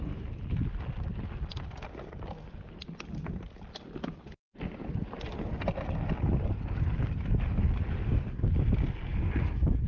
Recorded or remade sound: recorded